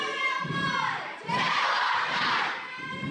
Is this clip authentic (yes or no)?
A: no